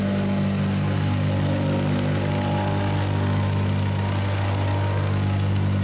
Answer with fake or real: real